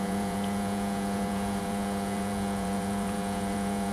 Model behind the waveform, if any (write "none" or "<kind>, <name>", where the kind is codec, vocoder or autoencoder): vocoder, Vocos